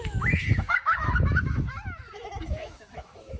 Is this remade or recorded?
remade